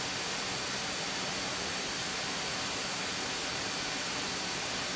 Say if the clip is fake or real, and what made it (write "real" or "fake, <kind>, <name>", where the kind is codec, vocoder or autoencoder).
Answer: real